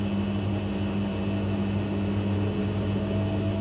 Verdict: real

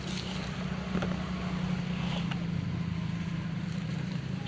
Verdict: real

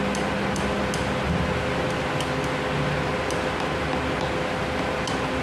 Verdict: real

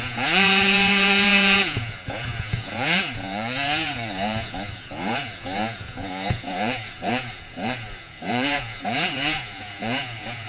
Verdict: fake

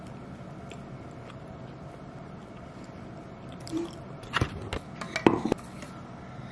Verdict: real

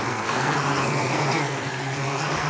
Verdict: fake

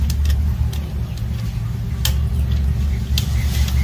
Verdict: real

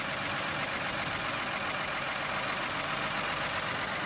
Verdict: real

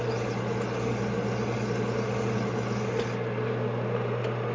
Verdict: real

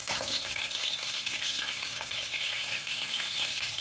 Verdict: fake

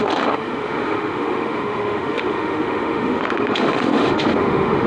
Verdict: fake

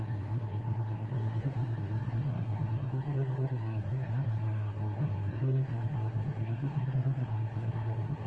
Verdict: fake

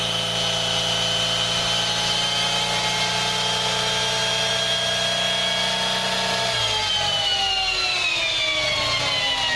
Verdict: real